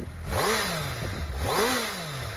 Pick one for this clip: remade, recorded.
recorded